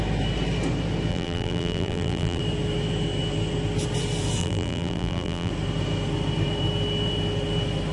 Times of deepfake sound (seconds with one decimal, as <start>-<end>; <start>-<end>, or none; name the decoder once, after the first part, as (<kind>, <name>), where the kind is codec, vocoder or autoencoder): 1.1-2.4 (vocoder, BigVGAN v2); 4.4-5.5